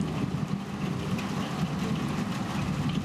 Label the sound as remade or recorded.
recorded